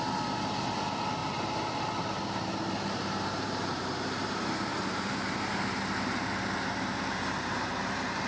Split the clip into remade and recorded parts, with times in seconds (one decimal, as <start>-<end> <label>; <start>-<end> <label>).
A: 0.0-1.2 recorded; 1.2-3.8 remade; 3.8-4.2 recorded; 4.2-8.3 remade